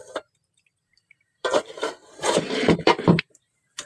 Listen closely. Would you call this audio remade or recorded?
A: remade